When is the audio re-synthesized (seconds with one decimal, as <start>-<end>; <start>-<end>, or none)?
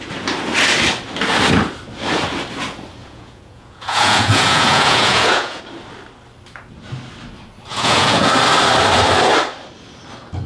3.0-5.6; 7.7-8.3